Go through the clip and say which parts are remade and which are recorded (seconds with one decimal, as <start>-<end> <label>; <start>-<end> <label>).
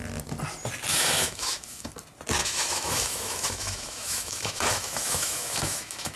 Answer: 0.0-0.9 recorded; 0.9-1.9 remade; 1.9-2.4 recorded; 2.4-6.2 remade